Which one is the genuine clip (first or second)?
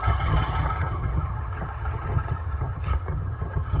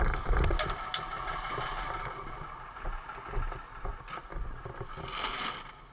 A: second